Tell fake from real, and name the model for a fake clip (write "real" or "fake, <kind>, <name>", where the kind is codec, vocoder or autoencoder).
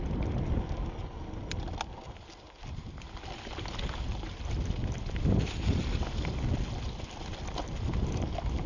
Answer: real